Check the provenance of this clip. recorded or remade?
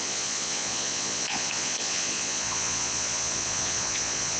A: remade